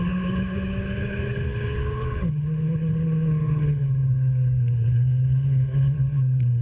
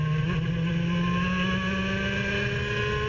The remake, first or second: first